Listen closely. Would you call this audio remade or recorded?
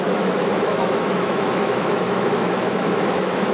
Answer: remade